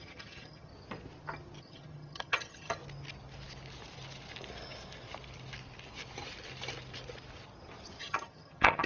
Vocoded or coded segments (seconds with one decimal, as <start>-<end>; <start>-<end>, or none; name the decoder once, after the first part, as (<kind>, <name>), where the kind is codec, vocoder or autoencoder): 0.0-0.7 (vocoder, HiFi-GAN); 1.6-2.8; 8.0-8.9

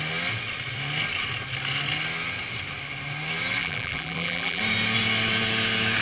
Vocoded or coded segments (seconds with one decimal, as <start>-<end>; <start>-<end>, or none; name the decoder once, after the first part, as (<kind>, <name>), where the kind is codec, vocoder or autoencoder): 3.6-4.6 (vocoder, BigVGAN v2)

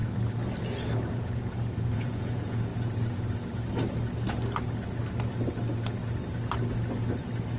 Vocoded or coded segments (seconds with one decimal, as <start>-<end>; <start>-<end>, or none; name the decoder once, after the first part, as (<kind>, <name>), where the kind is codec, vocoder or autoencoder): 1.1-2.7 (vocoder, Vocos)

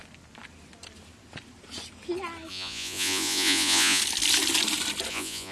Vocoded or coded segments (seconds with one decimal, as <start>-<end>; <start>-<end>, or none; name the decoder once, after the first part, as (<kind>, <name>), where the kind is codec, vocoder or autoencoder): 2.5-4.0 (vocoder, Vocos); 5.1-5.5

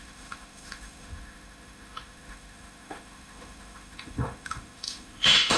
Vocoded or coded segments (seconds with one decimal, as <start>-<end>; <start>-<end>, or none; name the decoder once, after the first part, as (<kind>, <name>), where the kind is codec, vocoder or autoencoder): 0.0-5.6 (autoencoder, DAC-VAE)

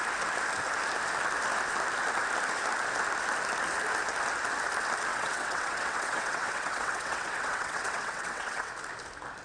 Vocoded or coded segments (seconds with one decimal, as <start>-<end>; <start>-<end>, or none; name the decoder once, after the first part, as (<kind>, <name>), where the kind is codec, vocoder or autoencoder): 5.1-8.7 (vocoder, WaveNeXt)

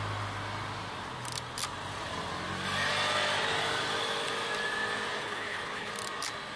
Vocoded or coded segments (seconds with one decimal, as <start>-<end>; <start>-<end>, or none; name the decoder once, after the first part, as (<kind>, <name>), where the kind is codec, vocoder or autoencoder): 5.2-5.9 (codec, HILCodec)